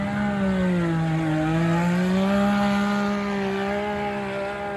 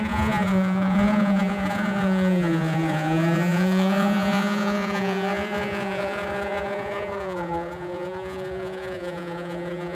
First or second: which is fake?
second